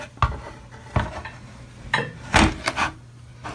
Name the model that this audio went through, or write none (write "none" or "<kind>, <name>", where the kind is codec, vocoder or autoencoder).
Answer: none